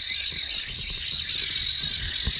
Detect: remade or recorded recorded